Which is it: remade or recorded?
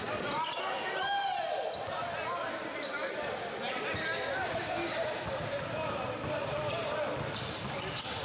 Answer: recorded